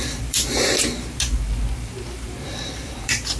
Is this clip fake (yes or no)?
yes